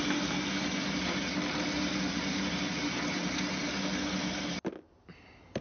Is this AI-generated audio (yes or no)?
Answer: no